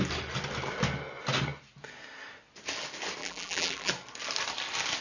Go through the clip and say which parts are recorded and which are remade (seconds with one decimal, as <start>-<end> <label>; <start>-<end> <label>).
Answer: 0.0-3.2 recorded; 3.2-3.9 remade; 3.9-5.0 recorded